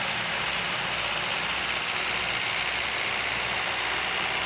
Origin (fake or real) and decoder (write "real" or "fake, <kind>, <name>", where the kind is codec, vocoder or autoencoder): real